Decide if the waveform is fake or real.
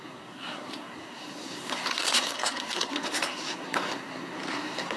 fake